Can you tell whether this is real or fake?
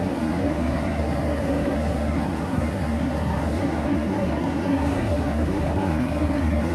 fake